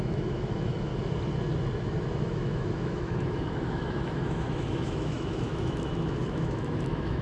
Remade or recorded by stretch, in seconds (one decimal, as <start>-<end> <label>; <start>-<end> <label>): 0.0-0.9 remade; 0.9-2.1 recorded; 2.1-7.2 remade